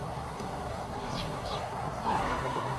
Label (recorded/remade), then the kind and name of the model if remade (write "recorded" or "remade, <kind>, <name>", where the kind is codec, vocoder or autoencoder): remade, codec, SNAC